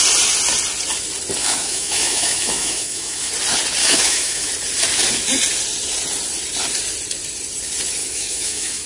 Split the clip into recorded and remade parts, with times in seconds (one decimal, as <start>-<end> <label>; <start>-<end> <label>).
0.0-1.4 recorded; 1.4-3.3 remade; 3.3-3.8 recorded; 3.8-4.5 remade; 4.5-8.0 recorded; 8.0-8.9 remade